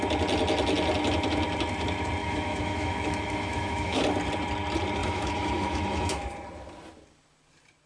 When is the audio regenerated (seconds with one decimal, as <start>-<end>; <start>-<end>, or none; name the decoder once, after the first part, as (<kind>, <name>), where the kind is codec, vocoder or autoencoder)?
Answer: 2.2-4.0 (autoencoder, DAC-VAE); 5.0-6.3